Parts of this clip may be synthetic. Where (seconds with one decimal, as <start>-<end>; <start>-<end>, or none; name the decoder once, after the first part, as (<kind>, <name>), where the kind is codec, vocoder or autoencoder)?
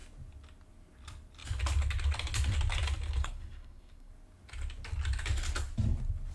3.2-4.1 (codec, SNAC)